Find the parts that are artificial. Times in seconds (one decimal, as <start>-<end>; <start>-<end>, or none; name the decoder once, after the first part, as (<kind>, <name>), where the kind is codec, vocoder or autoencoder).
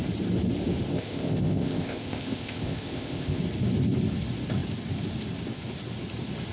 0.9-3.4 (codec, ZipCodec)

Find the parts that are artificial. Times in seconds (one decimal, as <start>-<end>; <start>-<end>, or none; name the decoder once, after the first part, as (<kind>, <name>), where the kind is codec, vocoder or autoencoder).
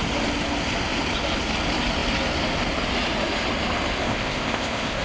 4.0-5.0 (codec, ZipCodec)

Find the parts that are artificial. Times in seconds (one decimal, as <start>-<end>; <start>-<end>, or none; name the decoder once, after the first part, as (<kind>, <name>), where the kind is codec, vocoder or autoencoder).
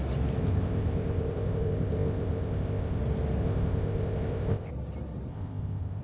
0.4-3.0 (codec, ZipCodec); 3.4-4.7; 5.3-6.0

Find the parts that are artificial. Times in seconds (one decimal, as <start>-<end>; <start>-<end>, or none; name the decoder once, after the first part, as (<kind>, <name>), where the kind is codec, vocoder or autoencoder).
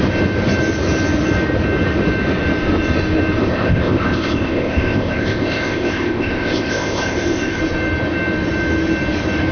3.4-7.6 (codec, ZipCodec)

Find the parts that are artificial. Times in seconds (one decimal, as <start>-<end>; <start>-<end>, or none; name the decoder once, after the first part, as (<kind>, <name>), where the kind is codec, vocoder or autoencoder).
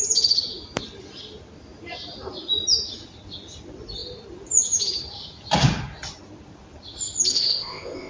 7.3-8.1 (codec, ZipCodec)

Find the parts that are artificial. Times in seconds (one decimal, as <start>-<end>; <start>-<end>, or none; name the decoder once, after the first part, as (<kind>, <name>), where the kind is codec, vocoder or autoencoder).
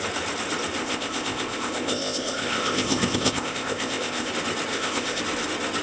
0.8-4.3 (codec, ZipCodec); 4.7-5.2